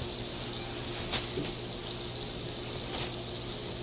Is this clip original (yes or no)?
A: yes